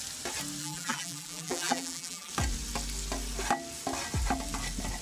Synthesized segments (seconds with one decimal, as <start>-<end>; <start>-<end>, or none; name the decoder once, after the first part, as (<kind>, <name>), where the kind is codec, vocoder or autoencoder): 0.6-2.3 (vocoder, BigVGAN v2)